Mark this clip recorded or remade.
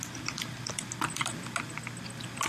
recorded